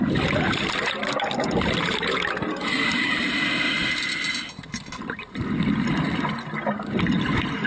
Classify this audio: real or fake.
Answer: real